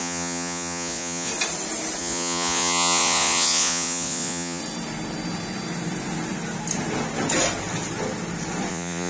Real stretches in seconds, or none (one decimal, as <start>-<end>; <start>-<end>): 1.3-2.0; 4.6-8.7

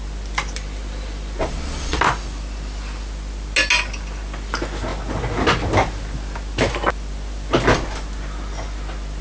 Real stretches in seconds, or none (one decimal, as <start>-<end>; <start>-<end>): 0.0-1.4; 2.0-9.2

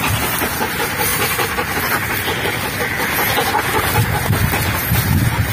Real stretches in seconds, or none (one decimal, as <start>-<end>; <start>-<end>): 0.0-5.5

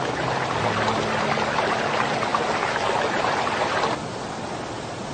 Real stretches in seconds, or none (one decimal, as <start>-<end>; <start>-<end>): 0.0-5.1

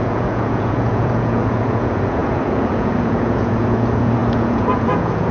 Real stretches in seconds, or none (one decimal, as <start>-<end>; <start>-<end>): none

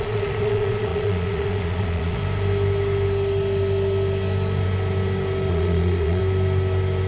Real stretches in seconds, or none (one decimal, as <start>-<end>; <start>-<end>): 2.2-5.5; 6.2-7.1

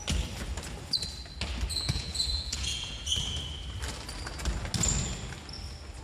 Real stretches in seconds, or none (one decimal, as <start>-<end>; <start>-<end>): 0.0-1.7; 3.1-6.0